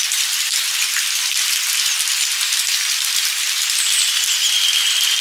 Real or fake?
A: real